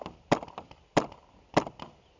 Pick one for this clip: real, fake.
real